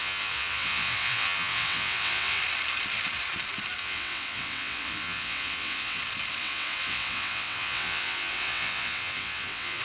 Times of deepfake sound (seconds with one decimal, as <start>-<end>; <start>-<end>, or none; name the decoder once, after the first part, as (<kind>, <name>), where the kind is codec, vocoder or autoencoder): 0.0-2.4 (vocoder, WaveNeXt); 3.8-6.0; 6.4-9.8